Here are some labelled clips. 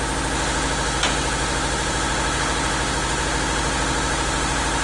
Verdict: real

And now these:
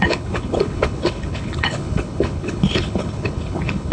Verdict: fake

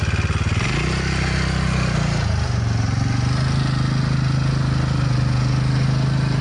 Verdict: real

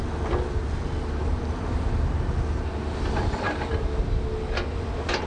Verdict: real